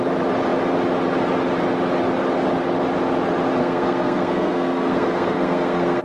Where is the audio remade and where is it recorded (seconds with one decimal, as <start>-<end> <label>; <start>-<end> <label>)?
0.0-3.6 recorded; 3.6-6.0 remade